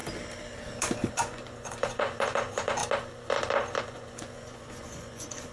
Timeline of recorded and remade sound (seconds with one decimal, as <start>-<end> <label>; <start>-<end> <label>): 0.0-1.1 recorded; 1.1-2.8 remade; 2.8-3.8 recorded; 3.8-5.5 remade